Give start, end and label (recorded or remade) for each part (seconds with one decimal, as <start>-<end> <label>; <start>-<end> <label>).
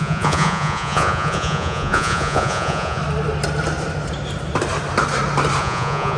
0.0-3.0 remade; 3.0-5.6 recorded; 5.6-6.2 remade